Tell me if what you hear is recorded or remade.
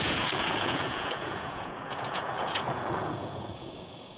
remade